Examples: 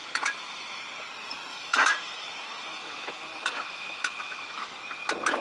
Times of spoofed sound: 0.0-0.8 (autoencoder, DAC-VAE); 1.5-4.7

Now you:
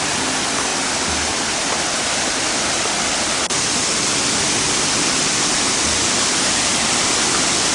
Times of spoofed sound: none